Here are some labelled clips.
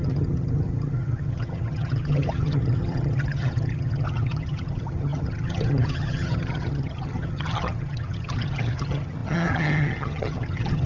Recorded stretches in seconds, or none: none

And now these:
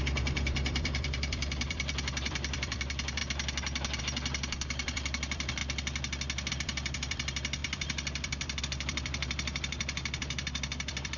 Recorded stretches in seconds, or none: 3.2-4.0; 5.6-6.5

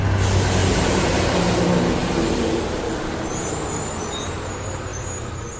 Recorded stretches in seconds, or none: 0.0-0.6; 1.6-2.0; 3.5-5.6

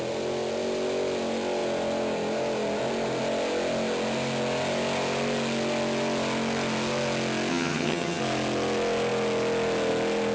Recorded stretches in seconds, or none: 0.0-7.5; 8.2-10.3